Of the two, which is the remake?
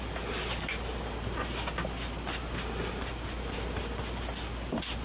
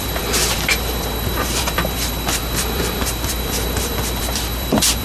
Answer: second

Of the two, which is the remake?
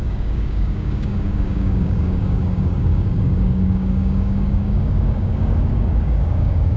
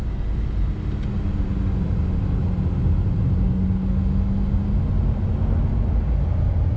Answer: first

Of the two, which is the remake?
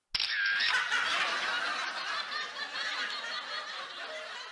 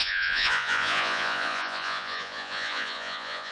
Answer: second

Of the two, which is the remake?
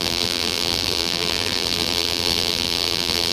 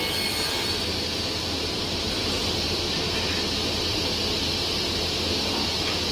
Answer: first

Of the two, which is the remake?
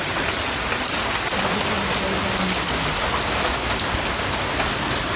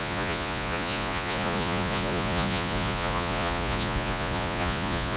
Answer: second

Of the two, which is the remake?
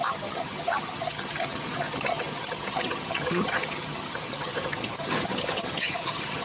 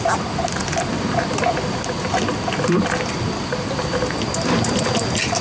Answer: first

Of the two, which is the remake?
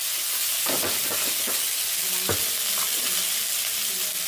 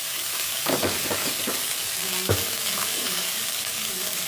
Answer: second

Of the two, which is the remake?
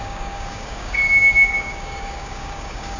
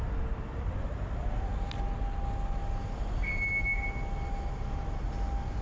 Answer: first